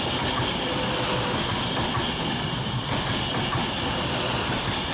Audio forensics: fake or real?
real